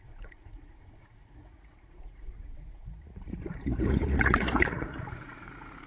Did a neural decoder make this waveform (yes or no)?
yes